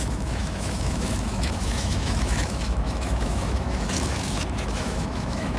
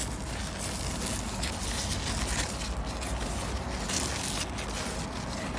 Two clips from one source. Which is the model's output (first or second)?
first